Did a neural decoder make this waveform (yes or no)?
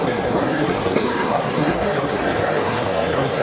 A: yes